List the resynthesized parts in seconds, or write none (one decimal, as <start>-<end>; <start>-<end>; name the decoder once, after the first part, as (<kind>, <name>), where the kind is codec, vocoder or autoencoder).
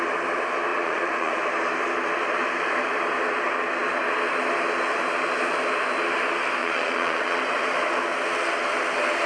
0.7-1.4 (vocoder, Vocos); 6.6-7.6